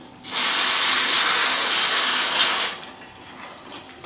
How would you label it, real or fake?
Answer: real